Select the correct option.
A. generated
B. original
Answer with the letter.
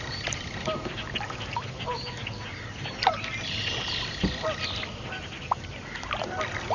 B